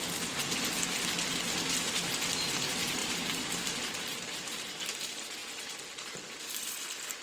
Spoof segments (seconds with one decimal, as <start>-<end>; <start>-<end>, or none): none